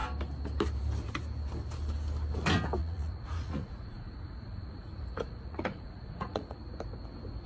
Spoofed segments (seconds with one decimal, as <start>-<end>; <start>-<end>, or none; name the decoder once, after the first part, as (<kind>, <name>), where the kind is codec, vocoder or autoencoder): 2.8-6.6 (vocoder, Vocos)